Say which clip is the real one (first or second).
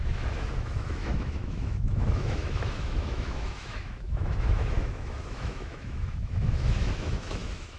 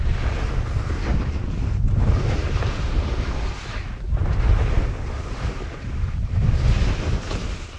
second